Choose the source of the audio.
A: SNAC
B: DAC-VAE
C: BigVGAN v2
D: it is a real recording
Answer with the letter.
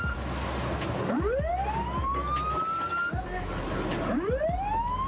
D